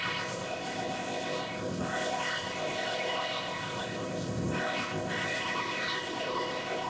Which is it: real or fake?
fake